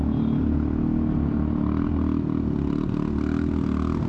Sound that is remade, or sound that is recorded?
recorded